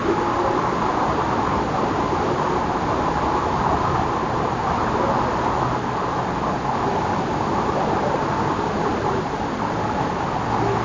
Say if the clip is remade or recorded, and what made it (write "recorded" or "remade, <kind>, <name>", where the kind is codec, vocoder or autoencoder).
recorded